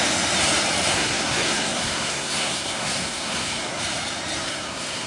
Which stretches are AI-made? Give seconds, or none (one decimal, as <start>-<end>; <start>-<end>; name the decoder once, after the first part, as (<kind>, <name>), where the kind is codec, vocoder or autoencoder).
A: 0.9-3.8 (codec, SNAC); 4.4-5.1